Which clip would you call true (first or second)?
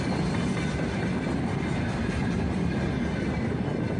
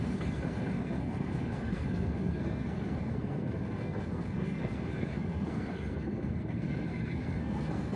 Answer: first